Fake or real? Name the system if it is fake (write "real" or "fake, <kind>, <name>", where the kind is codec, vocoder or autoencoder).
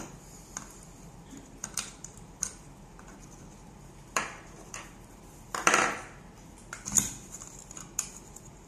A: fake, vocoder, BigVGAN v2